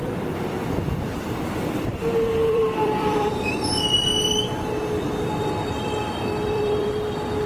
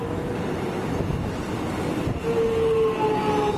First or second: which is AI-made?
first